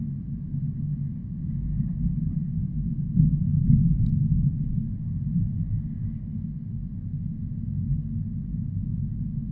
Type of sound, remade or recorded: recorded